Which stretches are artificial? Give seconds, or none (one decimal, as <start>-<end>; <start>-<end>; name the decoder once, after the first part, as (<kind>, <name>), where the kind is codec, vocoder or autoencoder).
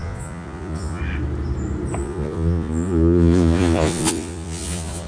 0.0-1.0 (vocoder, Vocos); 2.0-5.1